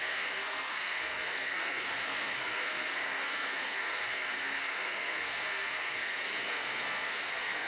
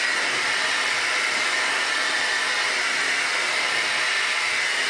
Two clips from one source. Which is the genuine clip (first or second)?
second